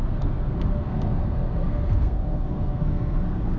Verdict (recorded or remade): remade